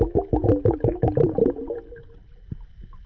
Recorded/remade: recorded